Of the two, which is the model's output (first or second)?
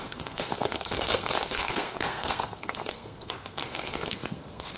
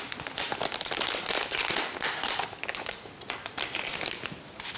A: first